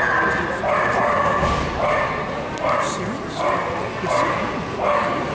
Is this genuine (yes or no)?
yes